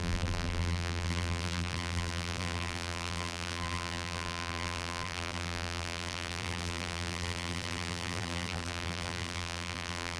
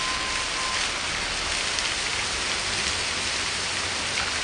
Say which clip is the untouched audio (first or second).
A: second